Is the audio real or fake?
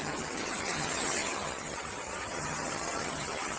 fake